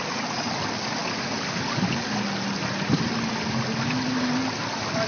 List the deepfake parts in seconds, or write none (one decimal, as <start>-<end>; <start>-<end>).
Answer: none